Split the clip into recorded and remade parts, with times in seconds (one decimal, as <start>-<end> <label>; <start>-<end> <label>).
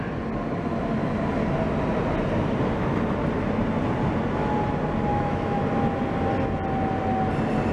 0.0-5.1 recorded; 5.1-5.6 remade; 5.6-7.7 recorded